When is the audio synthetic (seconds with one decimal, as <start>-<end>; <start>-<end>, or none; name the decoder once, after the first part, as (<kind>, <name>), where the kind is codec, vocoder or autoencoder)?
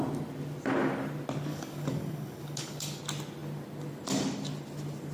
1.5-3.0 (codec, DAC)